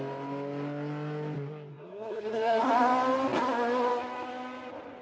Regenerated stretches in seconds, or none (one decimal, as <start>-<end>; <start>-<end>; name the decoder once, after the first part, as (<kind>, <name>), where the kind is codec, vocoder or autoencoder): 1.7-2.7 (codec, SNAC)